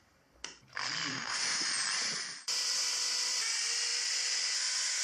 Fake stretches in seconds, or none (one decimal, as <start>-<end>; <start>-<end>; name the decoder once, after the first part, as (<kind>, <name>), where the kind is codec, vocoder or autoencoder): 1.1-1.7 (autoencoder, DAC-VAE)